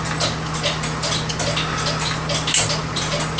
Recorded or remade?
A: recorded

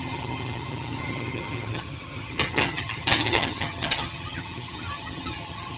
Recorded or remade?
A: remade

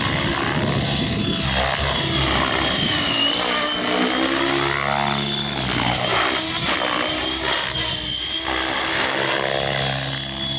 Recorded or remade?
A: recorded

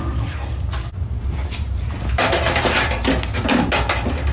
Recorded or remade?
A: recorded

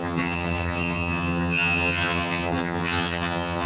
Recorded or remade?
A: remade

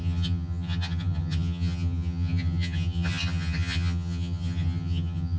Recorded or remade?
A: remade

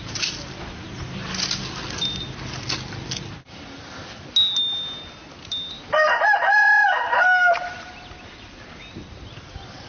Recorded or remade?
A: recorded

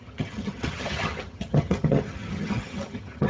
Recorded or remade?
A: remade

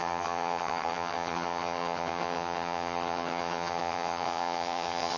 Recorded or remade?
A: remade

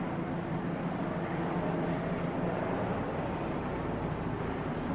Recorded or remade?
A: recorded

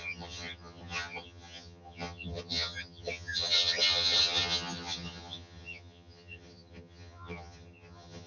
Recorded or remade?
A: remade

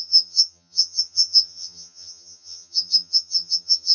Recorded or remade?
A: remade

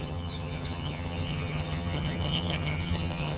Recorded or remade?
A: remade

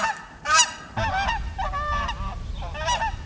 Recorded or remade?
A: recorded